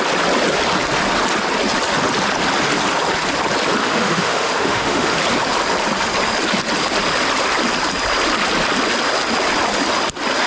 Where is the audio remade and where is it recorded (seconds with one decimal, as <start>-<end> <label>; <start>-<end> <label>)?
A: 0.0-3.8 recorded; 3.8-5.1 remade; 5.1-10.5 recorded